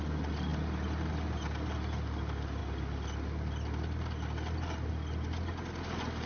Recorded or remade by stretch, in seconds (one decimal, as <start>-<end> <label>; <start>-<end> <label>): 0.0-6.3 recorded